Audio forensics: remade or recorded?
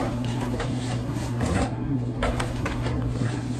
remade